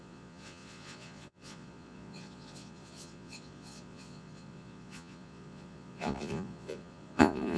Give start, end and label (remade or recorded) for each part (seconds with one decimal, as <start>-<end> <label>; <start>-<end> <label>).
0.0-7.6 remade